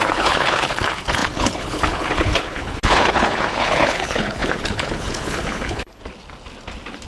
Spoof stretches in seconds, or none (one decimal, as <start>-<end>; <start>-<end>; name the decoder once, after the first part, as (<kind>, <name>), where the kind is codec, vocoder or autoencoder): 0.0-6.0 (codec, HILCodec)

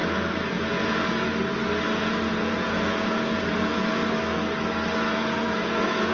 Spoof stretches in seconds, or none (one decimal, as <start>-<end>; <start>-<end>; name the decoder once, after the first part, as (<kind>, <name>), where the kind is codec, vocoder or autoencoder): 0.7-1.3 (vocoder, Vocos); 2.0-4.0; 5.1-6.1

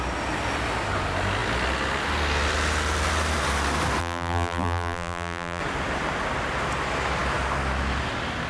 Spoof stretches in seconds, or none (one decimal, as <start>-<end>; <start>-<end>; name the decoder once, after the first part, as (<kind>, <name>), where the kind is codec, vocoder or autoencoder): 4.0-5.6 (vocoder, BigVGAN v2)

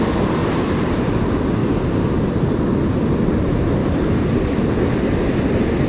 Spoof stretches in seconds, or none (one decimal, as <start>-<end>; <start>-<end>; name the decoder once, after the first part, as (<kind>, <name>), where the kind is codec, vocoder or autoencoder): 0.4-1.1 (vocoder, BigVGAN v2); 1.6-2.4; 3.8-4.3

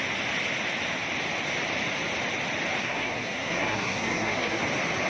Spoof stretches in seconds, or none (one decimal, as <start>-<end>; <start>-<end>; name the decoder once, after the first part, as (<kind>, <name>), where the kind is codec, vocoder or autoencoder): 2.8-4.6 (codec, SNAC)

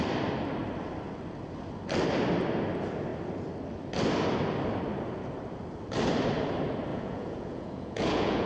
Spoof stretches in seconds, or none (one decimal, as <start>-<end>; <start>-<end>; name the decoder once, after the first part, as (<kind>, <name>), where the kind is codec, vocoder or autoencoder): 6.9-8.5 (vocoder, Vocos)